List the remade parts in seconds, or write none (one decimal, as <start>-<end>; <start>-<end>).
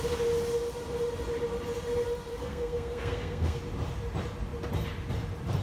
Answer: 2.3-3.6